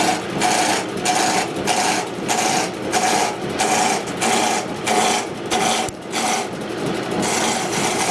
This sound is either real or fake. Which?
real